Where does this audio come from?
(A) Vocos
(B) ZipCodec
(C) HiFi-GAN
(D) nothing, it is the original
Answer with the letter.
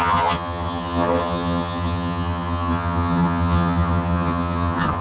C